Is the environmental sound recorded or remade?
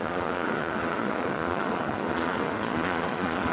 remade